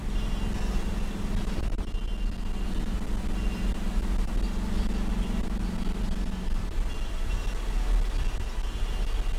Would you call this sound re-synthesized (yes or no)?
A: no